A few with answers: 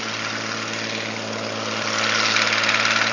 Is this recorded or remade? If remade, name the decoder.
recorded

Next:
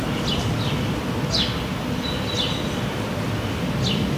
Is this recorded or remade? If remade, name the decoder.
recorded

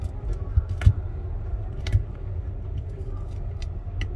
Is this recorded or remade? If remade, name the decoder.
recorded